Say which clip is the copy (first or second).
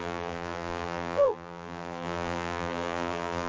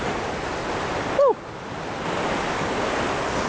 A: first